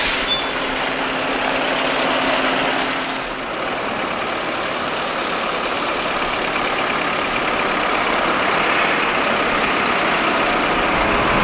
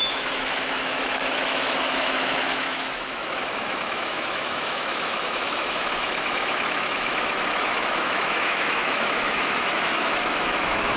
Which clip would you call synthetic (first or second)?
second